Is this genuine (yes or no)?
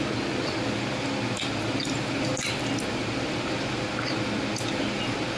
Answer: yes